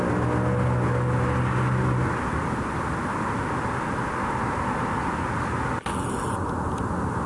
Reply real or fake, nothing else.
real